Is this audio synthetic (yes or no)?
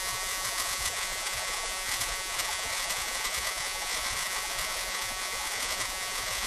yes